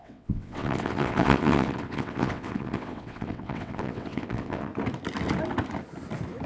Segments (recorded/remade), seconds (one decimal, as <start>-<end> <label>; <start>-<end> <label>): 0.0-4.7 remade; 4.7-6.5 recorded

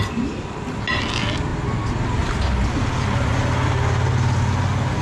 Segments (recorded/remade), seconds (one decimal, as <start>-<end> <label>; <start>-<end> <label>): 0.0-5.0 recorded

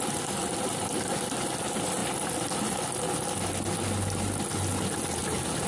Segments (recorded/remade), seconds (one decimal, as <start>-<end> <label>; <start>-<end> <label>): 0.0-5.7 recorded

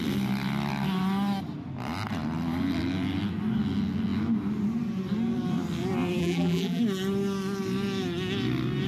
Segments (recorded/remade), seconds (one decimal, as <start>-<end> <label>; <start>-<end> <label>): 0.0-6.2 recorded; 6.2-6.8 remade; 6.8-8.9 recorded